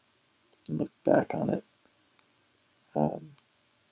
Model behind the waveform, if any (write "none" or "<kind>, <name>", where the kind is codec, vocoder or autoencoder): vocoder, Vocos